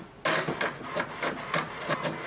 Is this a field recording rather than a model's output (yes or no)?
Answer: yes